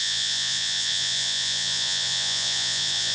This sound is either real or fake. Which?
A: fake